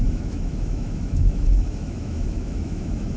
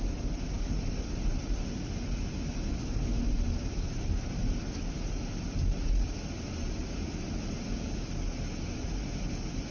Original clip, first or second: second